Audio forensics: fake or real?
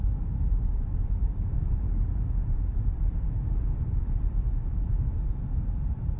fake